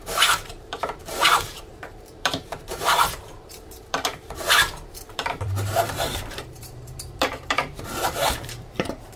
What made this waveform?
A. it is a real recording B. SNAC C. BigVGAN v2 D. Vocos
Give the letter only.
C